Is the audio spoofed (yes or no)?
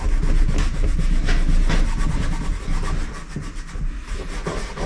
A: no